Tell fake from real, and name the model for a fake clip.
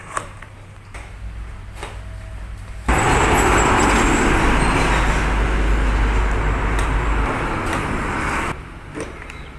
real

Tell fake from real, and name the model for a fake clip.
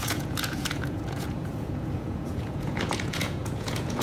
fake, vocoder, Vocos